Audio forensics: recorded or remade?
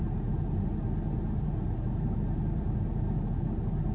recorded